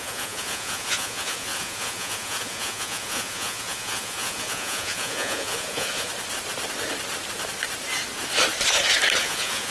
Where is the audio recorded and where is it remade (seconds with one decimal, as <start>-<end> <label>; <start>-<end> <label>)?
0.0-6.1 remade; 6.1-9.2 recorded; 9.2-9.7 remade